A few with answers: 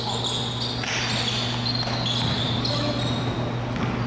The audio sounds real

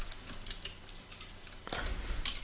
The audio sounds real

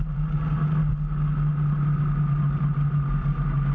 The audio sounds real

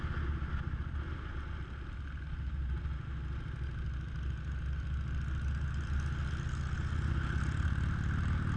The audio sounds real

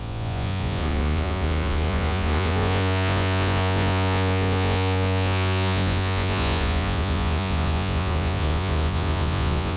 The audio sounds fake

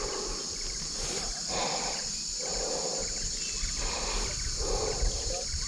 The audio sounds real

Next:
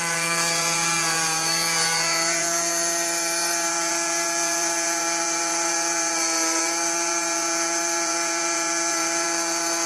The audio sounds fake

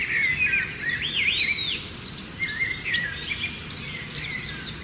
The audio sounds real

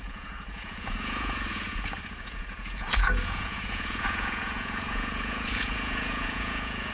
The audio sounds fake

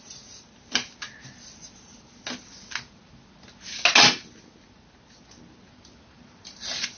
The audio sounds real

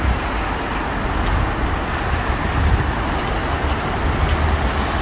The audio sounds real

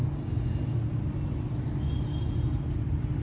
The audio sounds real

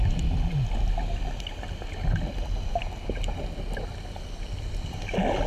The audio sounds real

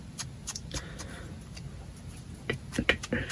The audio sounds real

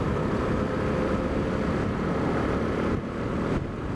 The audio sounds real